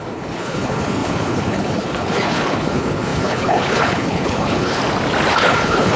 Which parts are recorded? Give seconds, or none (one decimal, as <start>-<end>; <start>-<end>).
4.8-5.3